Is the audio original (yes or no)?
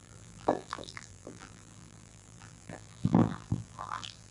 no